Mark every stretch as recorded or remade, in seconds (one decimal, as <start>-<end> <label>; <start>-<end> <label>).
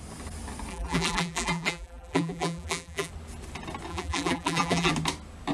0.0-0.7 recorded; 0.7-3.1 remade; 3.1-3.9 recorded; 3.9-4.9 remade; 4.9-5.5 recorded